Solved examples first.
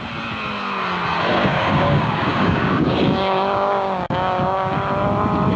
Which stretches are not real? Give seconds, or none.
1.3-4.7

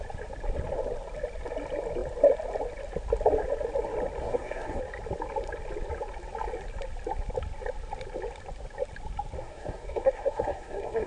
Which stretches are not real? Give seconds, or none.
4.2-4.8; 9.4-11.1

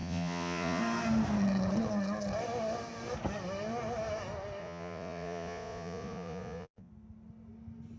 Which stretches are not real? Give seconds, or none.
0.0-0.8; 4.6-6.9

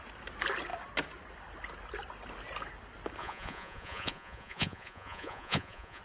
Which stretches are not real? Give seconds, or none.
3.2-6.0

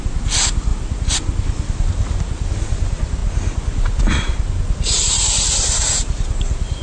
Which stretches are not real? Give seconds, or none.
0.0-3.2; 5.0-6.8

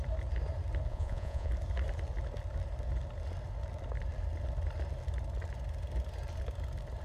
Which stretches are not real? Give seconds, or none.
0.9-1.5

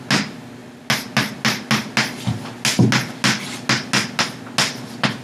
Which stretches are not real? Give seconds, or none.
none